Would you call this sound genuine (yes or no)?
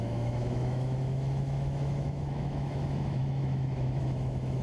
no